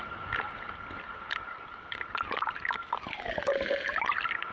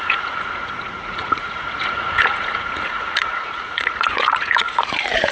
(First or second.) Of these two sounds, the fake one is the second